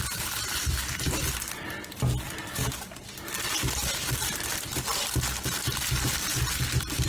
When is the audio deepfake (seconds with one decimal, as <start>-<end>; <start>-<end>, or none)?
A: none